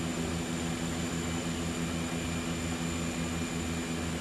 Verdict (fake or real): real